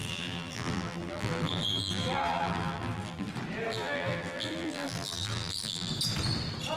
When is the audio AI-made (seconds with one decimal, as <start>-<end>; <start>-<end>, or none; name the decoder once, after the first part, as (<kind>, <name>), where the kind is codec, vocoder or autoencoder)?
0.0-3.3 (vocoder, BigVGAN v2); 3.7-5.9